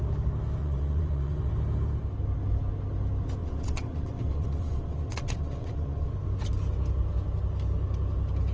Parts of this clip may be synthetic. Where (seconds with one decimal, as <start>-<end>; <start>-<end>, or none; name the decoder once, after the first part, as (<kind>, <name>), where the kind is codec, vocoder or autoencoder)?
0.6-1.5 (vocoder, WaveNeXt); 3.4-6.1